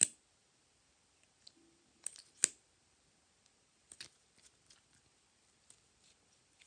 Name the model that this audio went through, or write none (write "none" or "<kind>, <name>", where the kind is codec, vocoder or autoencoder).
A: none